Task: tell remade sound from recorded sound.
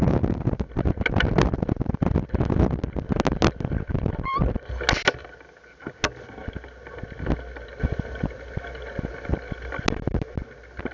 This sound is recorded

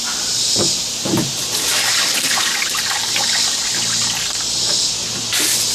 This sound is recorded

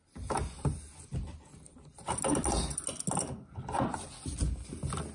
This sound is recorded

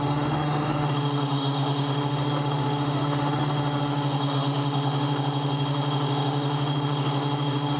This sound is remade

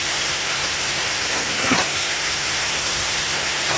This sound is remade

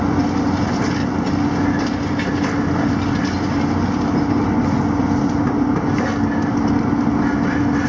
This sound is recorded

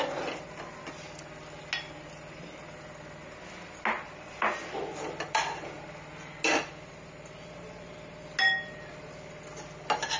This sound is recorded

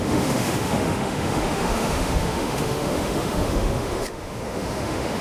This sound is remade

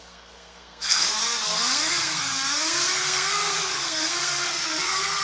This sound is remade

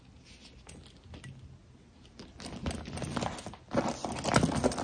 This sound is recorded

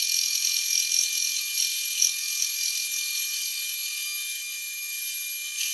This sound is remade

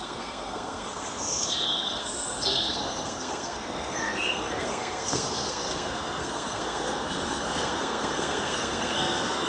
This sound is remade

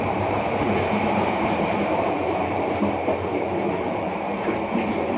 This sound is remade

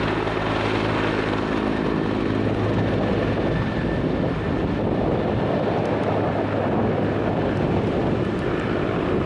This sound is recorded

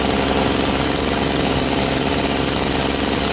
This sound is recorded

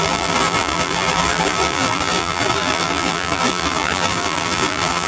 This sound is remade